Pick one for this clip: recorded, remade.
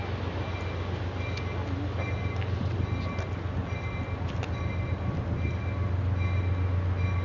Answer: recorded